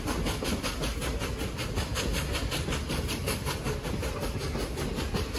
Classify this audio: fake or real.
real